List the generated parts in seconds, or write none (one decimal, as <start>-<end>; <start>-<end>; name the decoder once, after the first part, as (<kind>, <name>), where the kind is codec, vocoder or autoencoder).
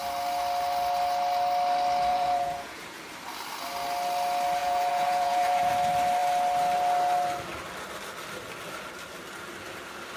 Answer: 2.1-3.0 (vocoder, Vocos); 4.6-5.7